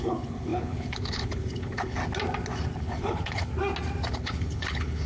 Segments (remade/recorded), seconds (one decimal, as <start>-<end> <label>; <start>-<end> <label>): 0.0-2.0 remade; 2.0-2.8 recorded; 2.8-3.5 remade; 3.5-4.1 recorded; 4.1-5.1 remade